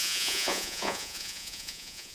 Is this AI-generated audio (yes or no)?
yes